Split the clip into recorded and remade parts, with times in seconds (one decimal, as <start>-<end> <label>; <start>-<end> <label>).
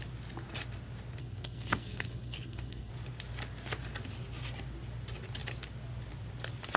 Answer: 0.0-1.2 recorded; 1.2-2.9 remade; 2.9-6.8 recorded